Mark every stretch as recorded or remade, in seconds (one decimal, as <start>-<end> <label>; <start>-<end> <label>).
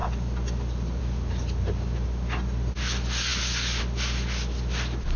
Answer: 0.0-5.2 recorded